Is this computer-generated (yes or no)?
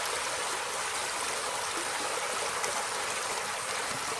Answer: no